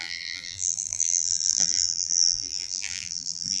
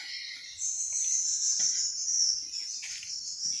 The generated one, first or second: first